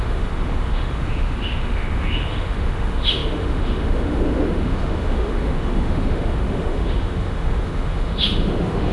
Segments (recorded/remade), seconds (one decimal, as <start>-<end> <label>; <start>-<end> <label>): 0.0-8.9 remade